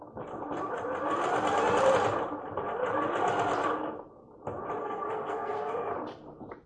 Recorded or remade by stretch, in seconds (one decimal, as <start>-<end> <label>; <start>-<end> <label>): 0.0-4.8 recorded; 4.8-5.9 remade; 5.9-6.7 recorded